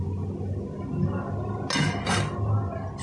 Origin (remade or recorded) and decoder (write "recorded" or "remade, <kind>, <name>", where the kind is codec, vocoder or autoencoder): recorded